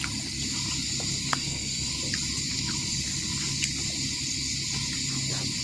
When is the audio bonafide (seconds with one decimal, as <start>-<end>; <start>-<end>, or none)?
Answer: 0.0-1.3; 1.9-5.6